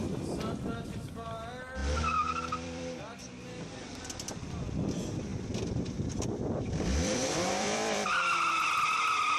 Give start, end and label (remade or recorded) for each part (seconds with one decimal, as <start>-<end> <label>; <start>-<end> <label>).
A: 0.0-9.4 remade

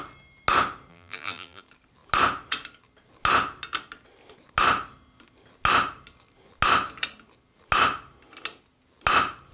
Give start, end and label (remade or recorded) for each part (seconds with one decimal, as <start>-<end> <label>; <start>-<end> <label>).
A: 0.0-0.9 recorded; 0.9-1.6 remade; 1.6-9.5 recorded

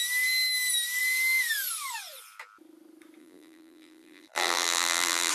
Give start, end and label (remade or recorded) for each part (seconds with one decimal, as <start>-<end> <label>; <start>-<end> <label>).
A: 0.0-3.2 recorded; 3.2-5.3 remade

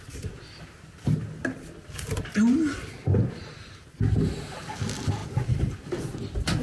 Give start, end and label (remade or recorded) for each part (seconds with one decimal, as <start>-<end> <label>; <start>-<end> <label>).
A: 0.0-5.2 recorded; 5.2-6.0 remade; 6.0-6.6 recorded

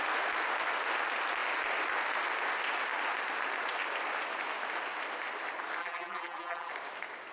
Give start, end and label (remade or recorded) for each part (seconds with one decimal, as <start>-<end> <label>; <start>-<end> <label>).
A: 0.0-5.8 recorded; 5.8-6.7 remade; 6.7-7.3 recorded